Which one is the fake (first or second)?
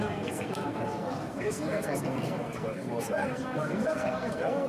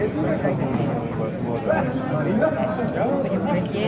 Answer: first